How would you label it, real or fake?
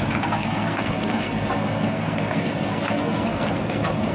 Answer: fake